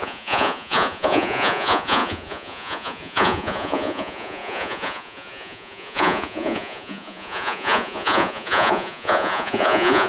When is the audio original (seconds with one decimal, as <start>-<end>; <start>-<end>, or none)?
none